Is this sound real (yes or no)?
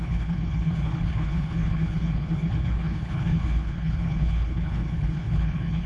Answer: no